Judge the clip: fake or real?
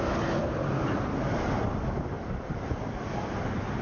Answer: real